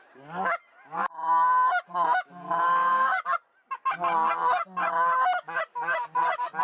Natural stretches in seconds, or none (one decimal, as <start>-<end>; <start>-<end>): 0.0-6.6